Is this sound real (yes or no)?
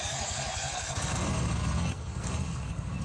no